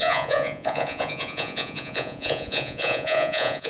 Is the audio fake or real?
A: fake